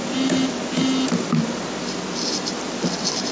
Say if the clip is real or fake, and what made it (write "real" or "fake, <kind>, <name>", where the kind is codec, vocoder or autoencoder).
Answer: real